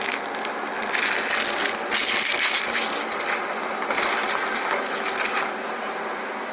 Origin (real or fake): real